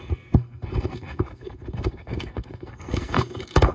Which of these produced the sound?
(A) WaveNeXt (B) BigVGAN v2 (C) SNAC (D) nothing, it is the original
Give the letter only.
C